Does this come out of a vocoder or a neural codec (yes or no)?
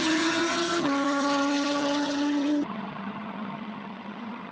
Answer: yes